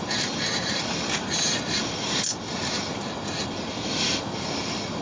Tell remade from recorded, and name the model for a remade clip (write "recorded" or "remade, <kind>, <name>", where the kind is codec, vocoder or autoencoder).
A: recorded